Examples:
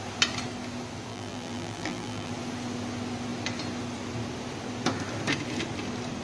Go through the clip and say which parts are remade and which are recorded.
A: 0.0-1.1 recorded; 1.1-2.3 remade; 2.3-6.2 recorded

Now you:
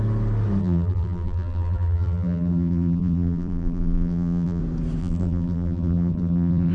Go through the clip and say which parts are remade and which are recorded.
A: 0.0-0.6 recorded; 0.6-4.6 remade; 4.6-5.0 recorded; 5.0-6.7 remade

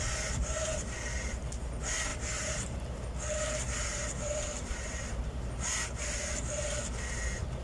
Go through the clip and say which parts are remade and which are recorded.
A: 0.0-2.1 recorded; 2.1-2.8 remade; 2.8-3.9 recorded; 3.9-5.1 remade; 5.1-7.6 recorded

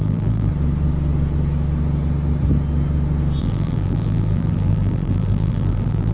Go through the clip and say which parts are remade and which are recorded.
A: 0.0-0.5 remade; 0.5-3.4 recorded; 3.4-6.1 remade

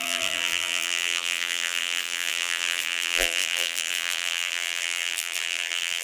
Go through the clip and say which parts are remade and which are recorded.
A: 0.0-6.0 remade

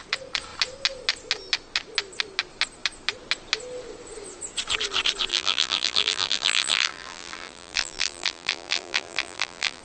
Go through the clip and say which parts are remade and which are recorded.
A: 0.0-5.3 recorded; 5.3-9.8 remade

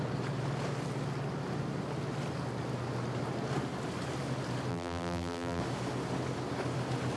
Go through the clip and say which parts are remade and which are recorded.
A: 0.0-4.7 recorded; 4.7-5.6 remade; 5.6-7.2 recorded